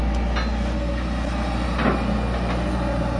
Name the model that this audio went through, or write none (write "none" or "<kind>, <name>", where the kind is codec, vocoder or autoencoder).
none